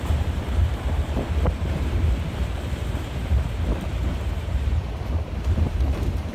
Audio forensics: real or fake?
fake